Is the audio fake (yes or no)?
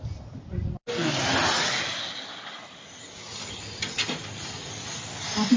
no